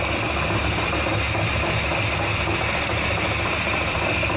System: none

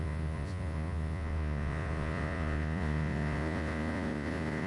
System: vocoder, Vocos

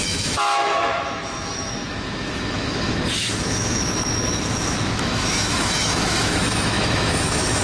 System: autoencoder, DAC-VAE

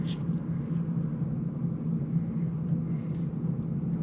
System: none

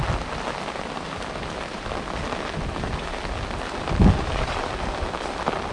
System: none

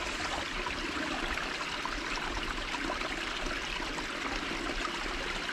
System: none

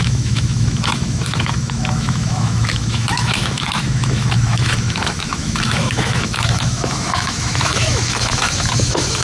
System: autoencoder, DAC-VAE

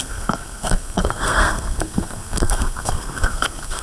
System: codec, SNAC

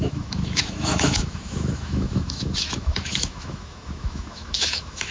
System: autoencoder, DAC-VAE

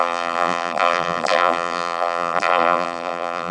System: vocoder, BigVGAN v2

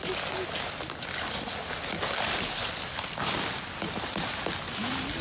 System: none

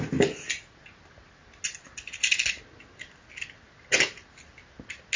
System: none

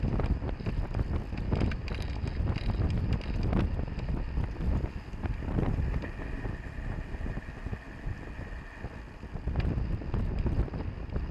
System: none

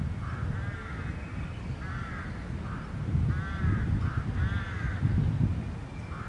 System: none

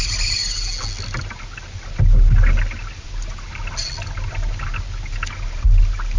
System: none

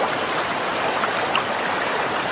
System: none